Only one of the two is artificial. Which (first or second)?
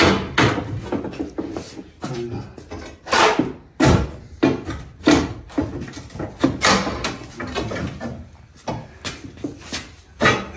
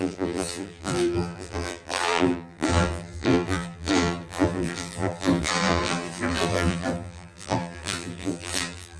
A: second